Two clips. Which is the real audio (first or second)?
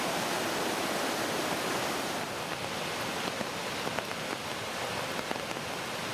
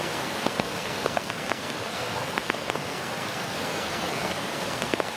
first